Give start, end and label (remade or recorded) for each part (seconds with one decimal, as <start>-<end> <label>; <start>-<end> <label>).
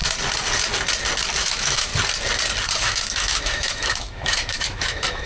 0.0-1.4 recorded; 1.4-1.9 remade; 1.9-2.8 recorded; 2.8-5.3 remade